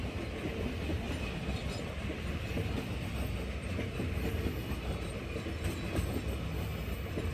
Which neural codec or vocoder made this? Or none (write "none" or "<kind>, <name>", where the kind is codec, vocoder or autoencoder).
none